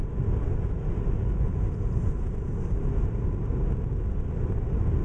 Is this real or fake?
real